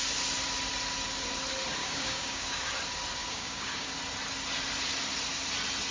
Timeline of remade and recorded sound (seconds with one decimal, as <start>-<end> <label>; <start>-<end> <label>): 0.0-1.8 recorded; 1.8-2.7 remade; 2.7-3.2 recorded; 3.2-3.9 remade; 3.9-5.9 recorded